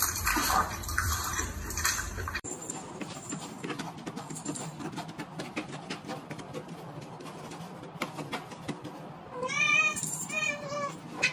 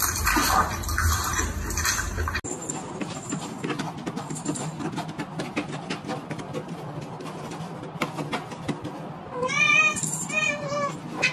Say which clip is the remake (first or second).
first